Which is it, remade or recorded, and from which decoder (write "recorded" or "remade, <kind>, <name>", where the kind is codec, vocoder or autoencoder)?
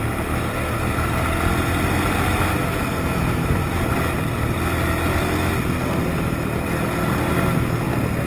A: recorded